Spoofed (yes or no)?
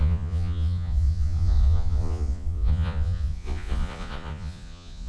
yes